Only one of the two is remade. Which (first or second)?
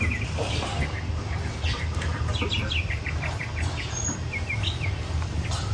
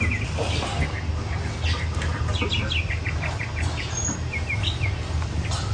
first